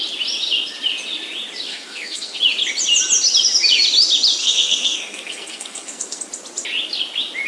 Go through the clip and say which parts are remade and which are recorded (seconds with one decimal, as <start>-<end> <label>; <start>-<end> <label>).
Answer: 0.0-1.7 recorded; 1.7-2.4 remade; 2.4-4.4 recorded; 4.4-6.2 remade; 6.2-7.5 recorded